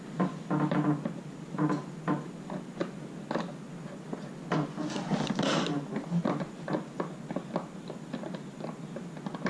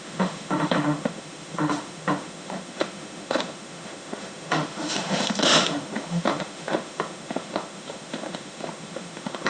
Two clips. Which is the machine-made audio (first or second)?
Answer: second